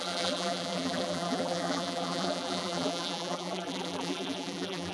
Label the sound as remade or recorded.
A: remade